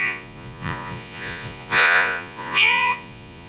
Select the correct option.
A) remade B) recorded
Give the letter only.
A